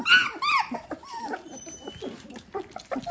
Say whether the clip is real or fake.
real